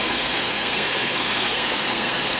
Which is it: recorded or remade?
remade